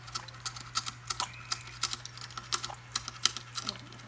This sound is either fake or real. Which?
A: real